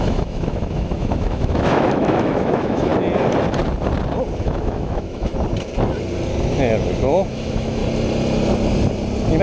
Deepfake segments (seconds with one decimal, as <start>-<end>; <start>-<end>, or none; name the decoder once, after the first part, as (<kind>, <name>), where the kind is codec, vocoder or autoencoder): 0.0-2.9 (autoencoder, DAC-VAE); 4.4-5.3; 7.3-7.8

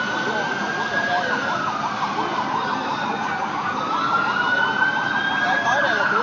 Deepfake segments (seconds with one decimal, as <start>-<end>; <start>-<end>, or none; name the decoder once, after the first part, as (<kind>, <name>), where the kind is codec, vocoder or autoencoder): none

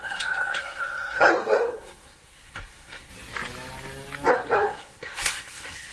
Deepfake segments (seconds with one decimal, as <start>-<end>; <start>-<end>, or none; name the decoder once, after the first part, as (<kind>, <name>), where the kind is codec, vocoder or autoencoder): 0.0-3.1 (codec, SNAC); 4.3-5.9

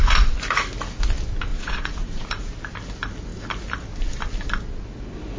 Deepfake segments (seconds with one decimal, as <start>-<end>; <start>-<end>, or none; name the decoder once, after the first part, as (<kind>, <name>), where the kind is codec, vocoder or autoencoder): 1.5-2.6 (vocoder, Vocos)

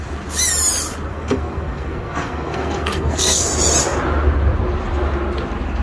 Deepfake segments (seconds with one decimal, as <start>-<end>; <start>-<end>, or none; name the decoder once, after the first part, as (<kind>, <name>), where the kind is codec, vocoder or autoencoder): 1.1-3.5 (codec, SNAC)